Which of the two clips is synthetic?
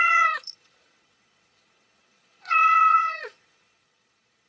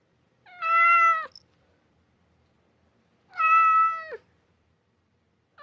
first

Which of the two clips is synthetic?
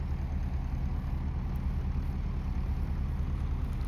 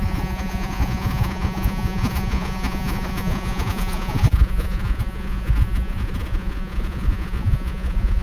second